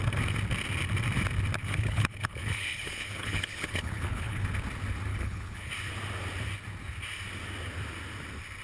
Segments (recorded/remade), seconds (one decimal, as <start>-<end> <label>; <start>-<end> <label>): 0.0-1.6 recorded; 1.6-4.4 remade; 4.4-5.1 recorded; 5.1-5.7 remade; 5.7-8.6 recorded